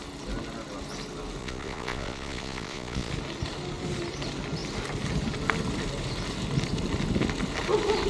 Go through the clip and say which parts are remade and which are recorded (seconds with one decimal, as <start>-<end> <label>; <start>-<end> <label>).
0.0-1.4 recorded; 1.4-3.1 remade; 3.1-8.1 recorded